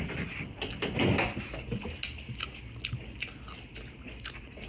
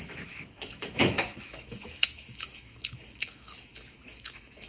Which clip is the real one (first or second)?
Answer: first